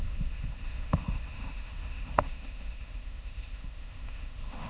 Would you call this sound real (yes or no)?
no